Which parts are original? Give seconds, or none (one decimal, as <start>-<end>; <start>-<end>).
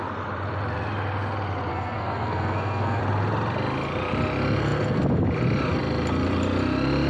0.0-1.7; 3.0-7.1